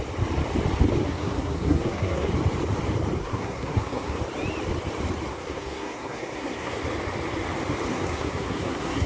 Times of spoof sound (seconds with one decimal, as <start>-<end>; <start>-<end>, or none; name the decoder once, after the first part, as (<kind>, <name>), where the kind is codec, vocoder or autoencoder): 1.0-2.3 (codec, SNAC); 3.2-4.2; 5.3-6.8; 7.9-9.1